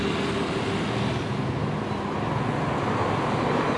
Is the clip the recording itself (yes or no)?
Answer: yes